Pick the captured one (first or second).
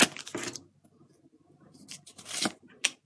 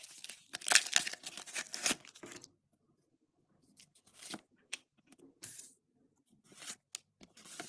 first